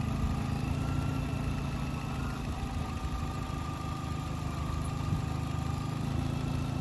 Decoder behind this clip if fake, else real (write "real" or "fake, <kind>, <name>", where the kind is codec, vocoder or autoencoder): real